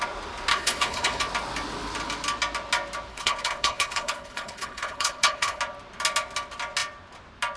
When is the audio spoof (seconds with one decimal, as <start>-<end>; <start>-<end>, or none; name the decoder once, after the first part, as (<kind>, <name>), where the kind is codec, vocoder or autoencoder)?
0.5-1.2 (codec, HILCodec); 3.1-5.6